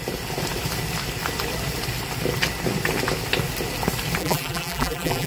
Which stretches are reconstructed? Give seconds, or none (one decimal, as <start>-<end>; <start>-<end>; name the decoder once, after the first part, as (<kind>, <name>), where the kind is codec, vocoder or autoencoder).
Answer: 4.2-5.3 (vocoder, BigVGAN v2)